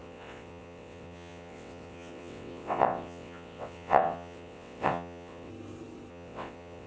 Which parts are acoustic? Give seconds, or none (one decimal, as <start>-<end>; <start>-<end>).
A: 5.5-6.1